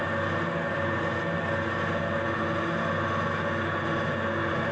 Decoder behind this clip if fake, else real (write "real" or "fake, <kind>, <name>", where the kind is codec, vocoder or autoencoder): real